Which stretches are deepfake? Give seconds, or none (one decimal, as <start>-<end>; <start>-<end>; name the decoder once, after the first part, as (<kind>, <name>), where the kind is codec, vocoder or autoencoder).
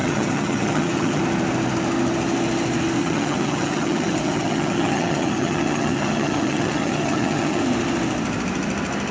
0.0-1.2 (vocoder, HiFi-GAN); 3.0-7.6